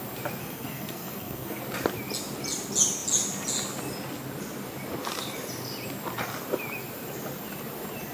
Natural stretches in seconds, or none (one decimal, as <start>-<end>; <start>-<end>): 0.0-0.4; 1.6-8.1